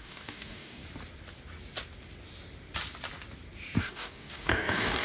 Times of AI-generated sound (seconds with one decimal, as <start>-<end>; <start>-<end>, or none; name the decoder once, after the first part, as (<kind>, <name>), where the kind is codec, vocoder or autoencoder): 0.0-0.8 (codec, DAC); 3.8-5.0